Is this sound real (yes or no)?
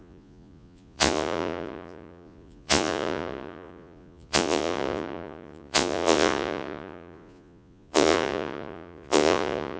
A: no